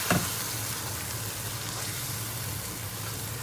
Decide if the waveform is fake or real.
real